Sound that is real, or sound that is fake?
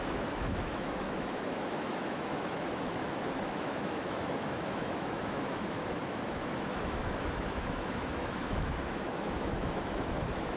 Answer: fake